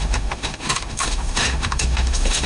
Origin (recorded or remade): remade